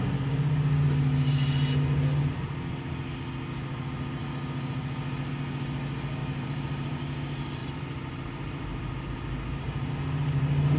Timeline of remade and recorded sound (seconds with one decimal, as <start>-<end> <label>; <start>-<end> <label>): 0.0-6.2 recorded; 6.2-7.0 remade; 7.0-7.6 recorded; 7.6-9.9 remade; 9.9-10.8 recorded